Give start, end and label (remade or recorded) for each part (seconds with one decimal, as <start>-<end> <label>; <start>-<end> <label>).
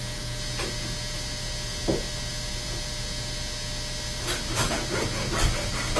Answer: 0.0-6.0 recorded